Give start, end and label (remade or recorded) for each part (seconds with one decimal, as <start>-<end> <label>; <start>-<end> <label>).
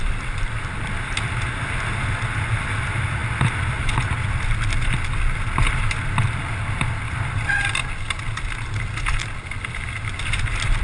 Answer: 0.0-10.8 recorded